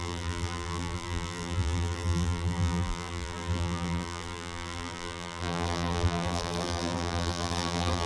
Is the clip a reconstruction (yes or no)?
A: yes